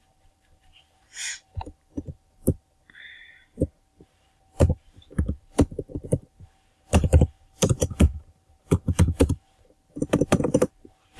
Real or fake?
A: fake